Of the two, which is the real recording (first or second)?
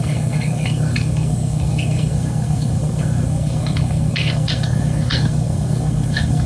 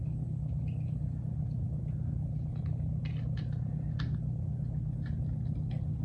second